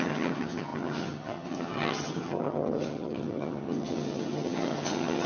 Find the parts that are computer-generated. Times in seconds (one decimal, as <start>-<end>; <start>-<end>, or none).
0.0-5.3